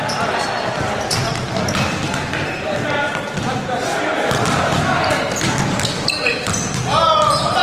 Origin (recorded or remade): recorded